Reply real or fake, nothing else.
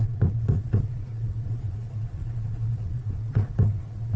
fake